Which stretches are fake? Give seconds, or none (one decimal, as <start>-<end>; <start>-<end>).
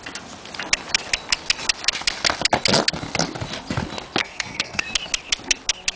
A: 4.2-4.8